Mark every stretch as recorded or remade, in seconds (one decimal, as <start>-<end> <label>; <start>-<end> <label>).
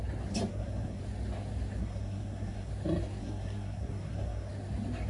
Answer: 0.0-0.5 recorded; 0.5-1.0 remade; 1.0-1.8 recorded; 1.8-2.7 remade; 2.7-3.2 recorded; 3.2-4.5 remade; 4.5-5.1 recorded